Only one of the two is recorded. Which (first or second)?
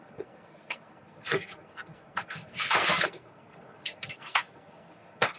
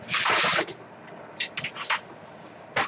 second